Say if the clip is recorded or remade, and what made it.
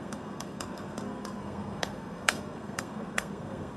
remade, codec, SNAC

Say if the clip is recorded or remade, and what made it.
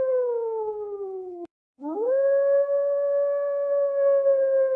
remade, codec, SNAC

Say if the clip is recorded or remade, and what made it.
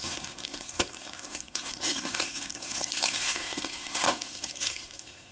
remade, codec, SNAC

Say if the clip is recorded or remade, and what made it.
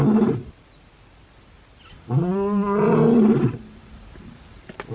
recorded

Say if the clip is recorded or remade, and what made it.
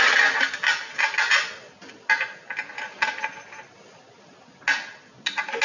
recorded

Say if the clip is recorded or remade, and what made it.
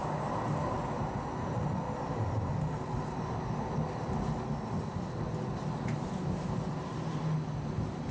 recorded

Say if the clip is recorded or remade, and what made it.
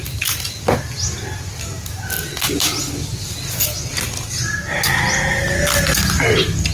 recorded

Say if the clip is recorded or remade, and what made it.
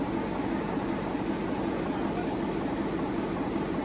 recorded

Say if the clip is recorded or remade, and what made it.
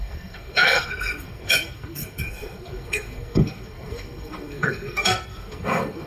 remade, codec, SNAC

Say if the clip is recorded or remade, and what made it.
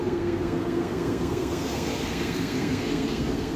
remade, codec, SNAC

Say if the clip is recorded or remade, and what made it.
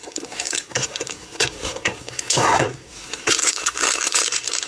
remade, codec, SNAC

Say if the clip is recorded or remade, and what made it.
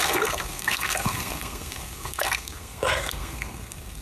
remade, codec, SNAC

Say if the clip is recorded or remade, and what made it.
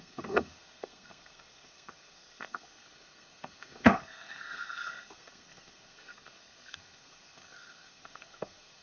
remade, codec, SNAC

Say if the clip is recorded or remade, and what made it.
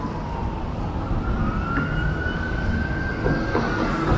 recorded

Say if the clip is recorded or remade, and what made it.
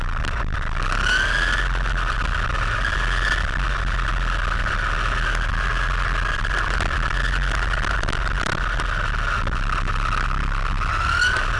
recorded